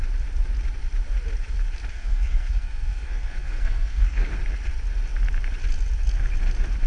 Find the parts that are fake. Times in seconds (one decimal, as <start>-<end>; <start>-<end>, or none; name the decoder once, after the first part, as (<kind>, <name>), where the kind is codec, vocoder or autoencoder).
1.9-4.3 (codec, SNAC)